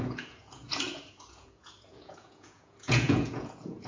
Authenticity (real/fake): fake